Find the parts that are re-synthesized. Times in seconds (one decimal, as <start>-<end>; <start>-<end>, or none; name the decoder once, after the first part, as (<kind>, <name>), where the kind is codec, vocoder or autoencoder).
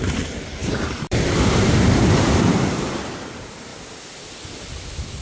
0.0-3.7 (vocoder, BigVGAN v2)